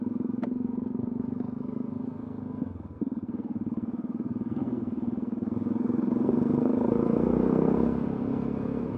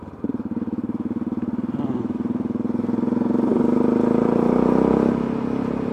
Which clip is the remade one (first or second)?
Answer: first